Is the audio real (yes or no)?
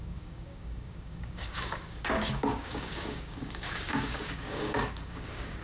no